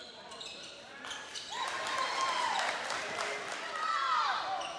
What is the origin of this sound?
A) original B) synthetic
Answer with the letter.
A